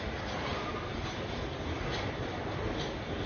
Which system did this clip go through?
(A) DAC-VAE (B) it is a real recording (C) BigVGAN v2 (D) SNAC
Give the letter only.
B